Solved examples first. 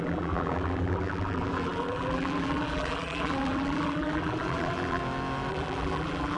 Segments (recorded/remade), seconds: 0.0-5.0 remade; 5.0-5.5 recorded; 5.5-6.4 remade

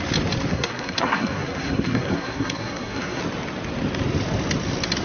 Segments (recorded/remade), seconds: 0.0-0.5 recorded; 0.5-3.2 remade; 3.2-5.0 recorded

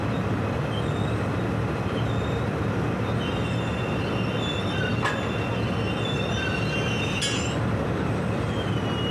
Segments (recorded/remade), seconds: 0.0-9.1 recorded

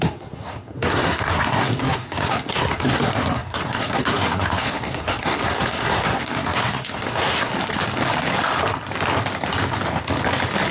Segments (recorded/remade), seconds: 0.0-7.5 remade; 7.5-10.7 recorded

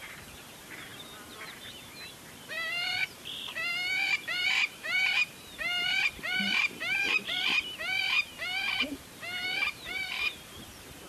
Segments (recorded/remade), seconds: 0.0-11.1 remade

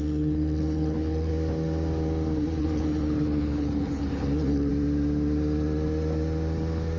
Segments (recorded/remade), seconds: 0.0-1.3 remade; 1.3-2.6 recorded; 2.6-4.7 remade; 4.7-7.0 recorded

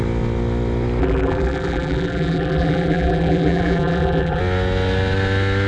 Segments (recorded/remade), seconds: 0.0-1.0 recorded; 1.0-4.4 remade; 4.4-5.7 recorded